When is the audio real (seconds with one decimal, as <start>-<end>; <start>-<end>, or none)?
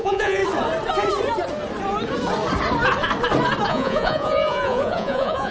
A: 0.4-3.7